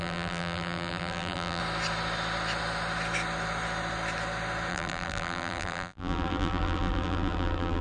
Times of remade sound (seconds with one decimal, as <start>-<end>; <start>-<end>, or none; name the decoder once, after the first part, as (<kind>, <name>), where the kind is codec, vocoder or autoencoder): 0.0-1.6 (vocoder, BigVGAN v2); 4.7-7.8